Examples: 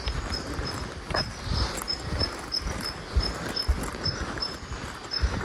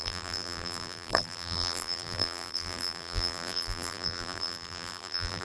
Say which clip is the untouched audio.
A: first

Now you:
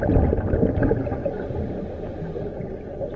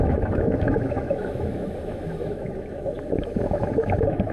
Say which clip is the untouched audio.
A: first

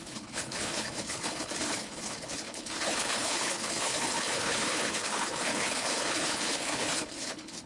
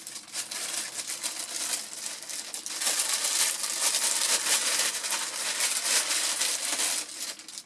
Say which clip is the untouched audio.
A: second